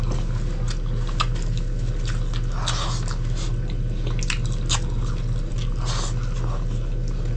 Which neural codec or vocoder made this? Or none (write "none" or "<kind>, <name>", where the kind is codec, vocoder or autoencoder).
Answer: none